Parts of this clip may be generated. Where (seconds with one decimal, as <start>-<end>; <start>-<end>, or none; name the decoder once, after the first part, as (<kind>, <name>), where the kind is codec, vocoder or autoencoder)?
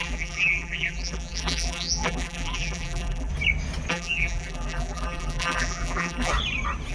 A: 0.0-3.3 (vocoder, BigVGAN v2); 3.9-6.3